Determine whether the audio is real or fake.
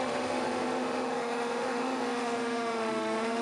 fake